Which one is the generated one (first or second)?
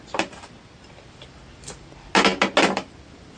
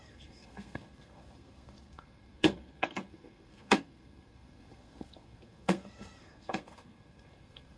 second